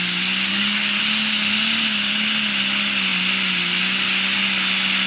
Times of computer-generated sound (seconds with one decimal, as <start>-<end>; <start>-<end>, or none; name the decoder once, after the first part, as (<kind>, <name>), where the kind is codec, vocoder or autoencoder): 0.5-1.0 (codec, DAC)